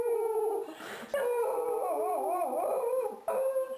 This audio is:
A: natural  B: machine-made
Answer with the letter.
A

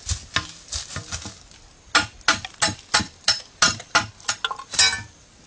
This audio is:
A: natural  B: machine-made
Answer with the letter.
A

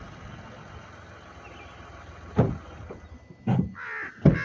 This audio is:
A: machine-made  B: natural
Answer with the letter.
B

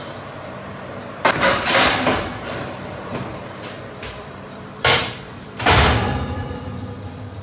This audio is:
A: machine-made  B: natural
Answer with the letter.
A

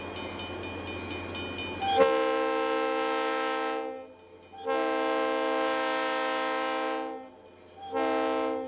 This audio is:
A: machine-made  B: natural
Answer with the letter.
B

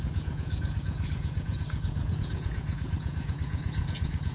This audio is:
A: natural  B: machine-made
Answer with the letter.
B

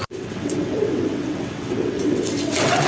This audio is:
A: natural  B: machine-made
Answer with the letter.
B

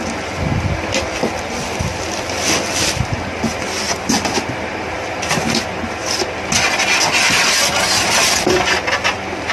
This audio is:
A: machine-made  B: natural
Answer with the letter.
B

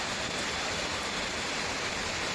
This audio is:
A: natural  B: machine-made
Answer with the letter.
B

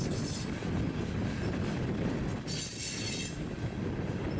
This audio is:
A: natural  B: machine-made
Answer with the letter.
A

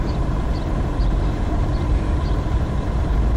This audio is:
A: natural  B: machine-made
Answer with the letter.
B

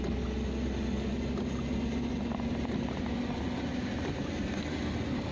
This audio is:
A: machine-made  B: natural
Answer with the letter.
B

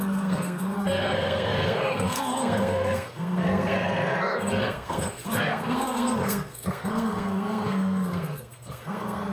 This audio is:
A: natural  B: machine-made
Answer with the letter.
B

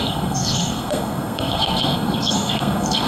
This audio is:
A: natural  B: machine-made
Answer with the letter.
B